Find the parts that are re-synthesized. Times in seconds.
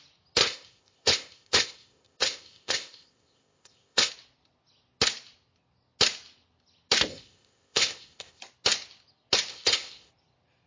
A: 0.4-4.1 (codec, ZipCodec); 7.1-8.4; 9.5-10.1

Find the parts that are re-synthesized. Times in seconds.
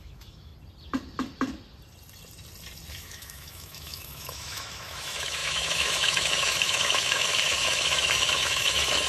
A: 0.0-0.5 (autoencoder, DAC-VAE); 2.9-9.1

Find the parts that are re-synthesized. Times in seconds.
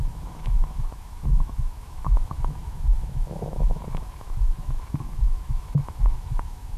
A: 0.0-6.8 (autoencoder, DAC-VAE)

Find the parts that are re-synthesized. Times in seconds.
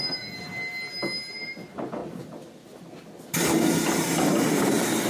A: none